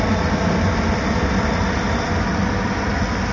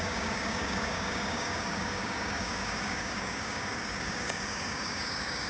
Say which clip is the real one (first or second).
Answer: first